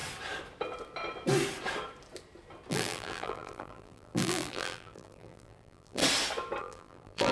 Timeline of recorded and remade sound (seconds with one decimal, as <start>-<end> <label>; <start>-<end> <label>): 0.0-2.7 recorded; 2.7-6.0 remade; 6.0-6.6 recorded; 6.6-7.3 remade